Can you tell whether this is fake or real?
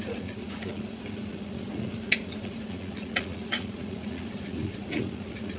fake